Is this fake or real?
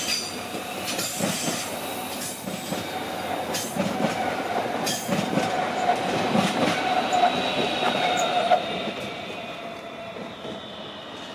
real